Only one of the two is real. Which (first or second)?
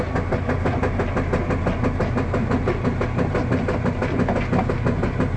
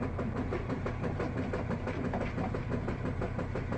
first